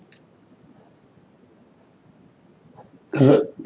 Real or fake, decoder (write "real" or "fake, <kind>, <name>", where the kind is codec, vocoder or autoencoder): real